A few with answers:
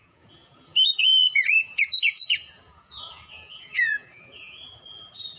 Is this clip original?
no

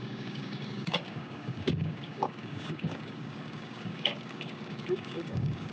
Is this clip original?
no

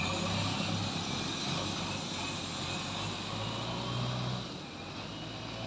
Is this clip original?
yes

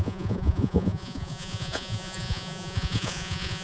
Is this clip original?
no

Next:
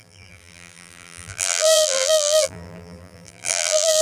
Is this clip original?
no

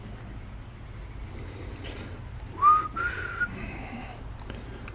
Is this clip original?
yes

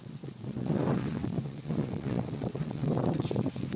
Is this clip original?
no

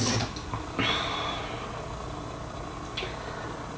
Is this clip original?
yes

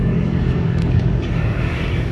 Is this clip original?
no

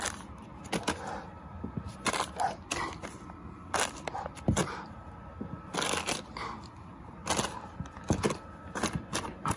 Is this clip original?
yes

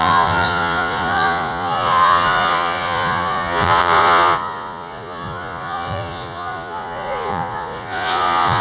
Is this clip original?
no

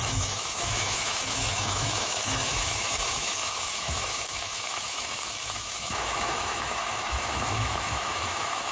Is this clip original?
no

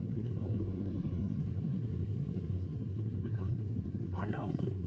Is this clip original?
no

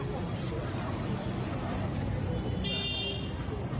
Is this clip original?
yes